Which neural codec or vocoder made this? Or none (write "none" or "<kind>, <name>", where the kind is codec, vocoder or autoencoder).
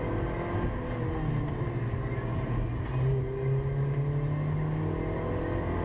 none